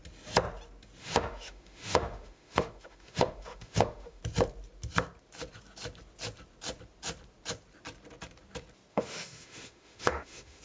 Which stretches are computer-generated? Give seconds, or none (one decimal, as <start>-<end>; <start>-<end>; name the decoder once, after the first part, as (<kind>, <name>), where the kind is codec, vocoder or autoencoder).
1.0-4.2 (autoencoder, DAC-VAE); 8.9-10.6